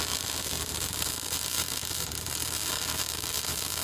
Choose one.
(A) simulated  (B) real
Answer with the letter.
A